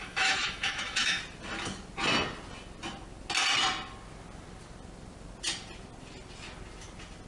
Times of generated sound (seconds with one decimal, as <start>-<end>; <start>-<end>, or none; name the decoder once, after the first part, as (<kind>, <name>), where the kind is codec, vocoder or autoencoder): 0.0-1.2 (autoencoder, DAC-VAE)